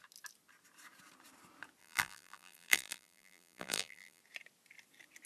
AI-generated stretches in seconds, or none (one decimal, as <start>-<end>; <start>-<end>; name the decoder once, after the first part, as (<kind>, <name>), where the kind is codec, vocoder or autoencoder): 1.8-4.2 (vocoder, BigVGAN v2)

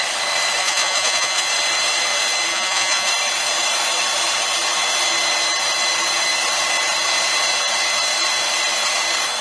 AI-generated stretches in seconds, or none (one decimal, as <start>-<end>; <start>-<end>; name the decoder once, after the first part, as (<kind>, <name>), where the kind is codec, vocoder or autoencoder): 0.6-1.5 (vocoder, Vocos); 2.5-3.1

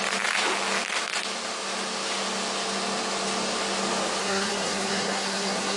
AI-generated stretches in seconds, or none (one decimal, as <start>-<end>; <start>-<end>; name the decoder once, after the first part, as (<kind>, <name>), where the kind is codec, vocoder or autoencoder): 4.2-5.8 (codec, SNAC)

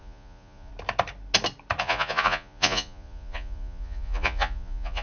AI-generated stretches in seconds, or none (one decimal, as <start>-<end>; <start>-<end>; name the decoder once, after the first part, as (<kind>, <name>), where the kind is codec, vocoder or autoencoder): 0.0-0.7 (vocoder, Vocos); 1.8-5.0

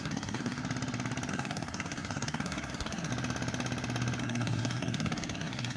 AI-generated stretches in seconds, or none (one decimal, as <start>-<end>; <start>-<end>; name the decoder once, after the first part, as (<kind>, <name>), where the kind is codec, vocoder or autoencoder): 0.0-0.6 (codec, SNAC); 1.3-3.1; 4.2-5.8

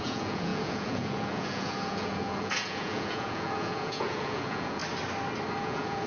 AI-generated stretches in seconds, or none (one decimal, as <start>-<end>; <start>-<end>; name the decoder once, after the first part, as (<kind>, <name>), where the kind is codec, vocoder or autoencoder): 0.0-4.8 (vocoder, Vocos); 5.6-6.1

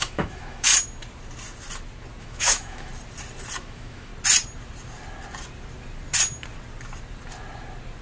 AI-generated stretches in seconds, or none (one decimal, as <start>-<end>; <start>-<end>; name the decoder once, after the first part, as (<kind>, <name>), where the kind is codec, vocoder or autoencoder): 0.0-0.7 (autoencoder, DAC-VAE); 2.2-2.9; 3.6-4.1

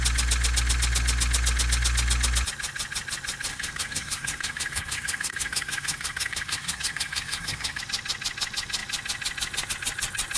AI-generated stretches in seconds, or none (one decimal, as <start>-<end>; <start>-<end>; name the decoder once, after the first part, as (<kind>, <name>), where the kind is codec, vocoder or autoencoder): 3.5-7.8 (codec, SNAC)